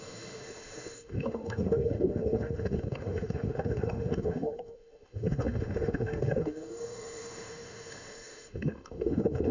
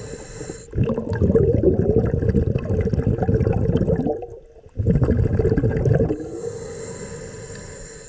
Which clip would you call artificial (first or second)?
first